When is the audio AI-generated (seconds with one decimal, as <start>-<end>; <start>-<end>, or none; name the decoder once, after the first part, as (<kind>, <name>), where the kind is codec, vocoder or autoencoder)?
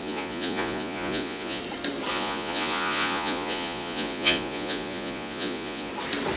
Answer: 0.0-1.6 (vocoder, Vocos); 2.1-5.9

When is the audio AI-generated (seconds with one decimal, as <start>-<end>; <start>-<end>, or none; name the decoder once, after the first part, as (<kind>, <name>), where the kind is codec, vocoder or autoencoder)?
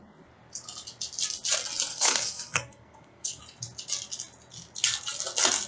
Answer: 1.9-3.4 (codec, SNAC)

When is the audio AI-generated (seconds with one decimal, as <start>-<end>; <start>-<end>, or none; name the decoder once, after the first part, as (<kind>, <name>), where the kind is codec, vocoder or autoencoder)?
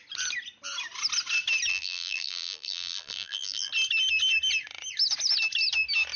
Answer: 1.7-3.7 (vocoder, BigVGAN v2)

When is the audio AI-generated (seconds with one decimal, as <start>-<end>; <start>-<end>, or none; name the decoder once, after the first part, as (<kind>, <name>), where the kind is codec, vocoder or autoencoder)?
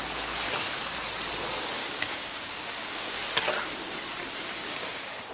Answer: 1.8-3.2 (codec, DAC); 4.6-5.3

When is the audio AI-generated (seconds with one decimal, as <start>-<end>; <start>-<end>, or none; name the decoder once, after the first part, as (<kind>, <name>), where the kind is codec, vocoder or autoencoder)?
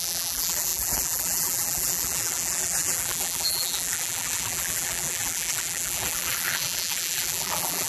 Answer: 0.0-7.9 (vocoder, BigVGAN v2)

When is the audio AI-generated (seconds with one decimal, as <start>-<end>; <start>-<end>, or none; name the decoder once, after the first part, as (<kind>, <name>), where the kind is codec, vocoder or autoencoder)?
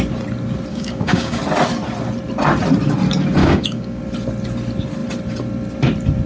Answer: 0.7-1.4 (codec, DAC); 3.4-4.0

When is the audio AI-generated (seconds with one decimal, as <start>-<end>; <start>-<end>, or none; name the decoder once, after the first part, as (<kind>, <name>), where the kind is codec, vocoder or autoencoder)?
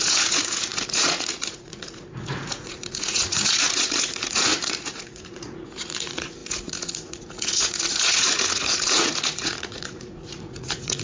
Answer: 0.0-11.0 (vocoder, Vocos)